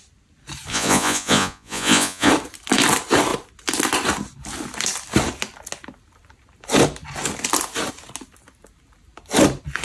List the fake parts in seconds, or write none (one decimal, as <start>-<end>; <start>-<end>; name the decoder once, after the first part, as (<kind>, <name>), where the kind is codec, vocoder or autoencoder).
0.7-2.3 (vocoder, Vocos)